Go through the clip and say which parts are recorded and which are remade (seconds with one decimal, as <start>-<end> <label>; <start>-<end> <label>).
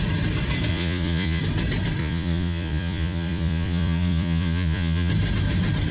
0.0-0.7 recorded; 0.7-1.4 remade; 1.4-2.0 recorded; 2.0-5.1 remade; 5.1-5.9 recorded